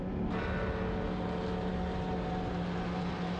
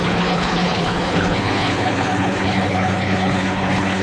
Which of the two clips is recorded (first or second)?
first